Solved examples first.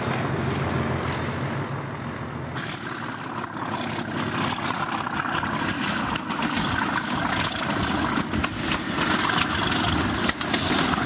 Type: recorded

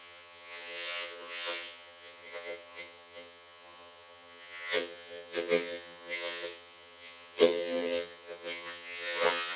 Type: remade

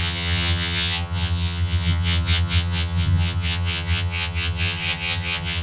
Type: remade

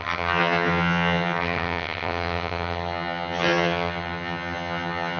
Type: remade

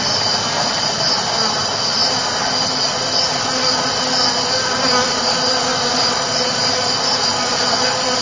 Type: recorded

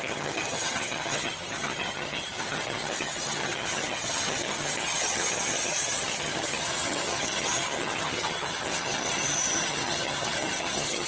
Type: remade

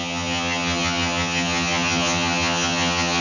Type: remade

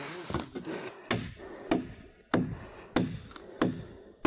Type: recorded